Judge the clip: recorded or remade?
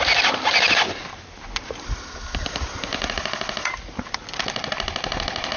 recorded